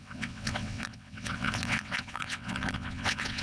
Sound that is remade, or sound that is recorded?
remade